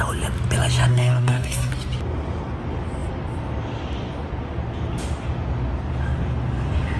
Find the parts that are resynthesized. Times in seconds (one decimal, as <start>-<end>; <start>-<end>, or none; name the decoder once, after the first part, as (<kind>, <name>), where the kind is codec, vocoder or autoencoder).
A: 0.9-1.7 (codec, SNAC)